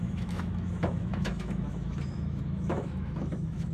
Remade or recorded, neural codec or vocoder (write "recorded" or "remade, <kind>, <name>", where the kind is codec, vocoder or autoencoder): remade, autoencoder, DAC-VAE